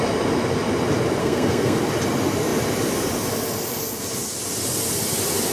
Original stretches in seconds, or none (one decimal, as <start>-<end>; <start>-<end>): 0.0-1.2; 1.8-5.5